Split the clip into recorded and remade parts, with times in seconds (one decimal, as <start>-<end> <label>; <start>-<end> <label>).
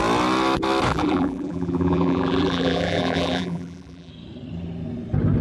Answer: 0.0-0.9 recorded; 0.9-4.1 remade; 4.1-5.4 recorded